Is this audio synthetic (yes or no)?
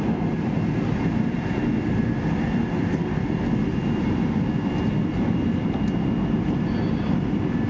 no